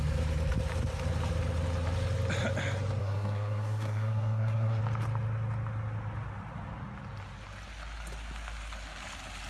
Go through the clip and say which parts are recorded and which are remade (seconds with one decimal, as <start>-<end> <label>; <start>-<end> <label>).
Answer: 0.0-3.0 recorded; 3.0-4.8 remade; 4.8-9.5 recorded